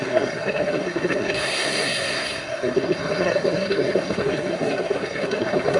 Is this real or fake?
fake